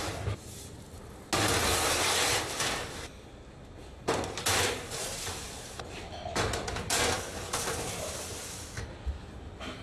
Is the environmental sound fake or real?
real